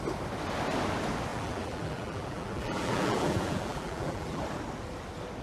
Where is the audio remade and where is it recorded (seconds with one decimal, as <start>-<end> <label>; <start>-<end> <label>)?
0.0-1.3 recorded; 1.3-4.4 remade; 4.4-5.4 recorded